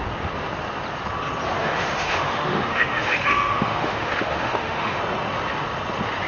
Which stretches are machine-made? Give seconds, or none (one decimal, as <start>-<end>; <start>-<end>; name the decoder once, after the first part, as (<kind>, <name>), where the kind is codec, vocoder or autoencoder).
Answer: 1.6-5.0 (autoencoder, DAC-VAE)